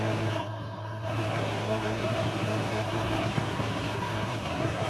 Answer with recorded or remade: remade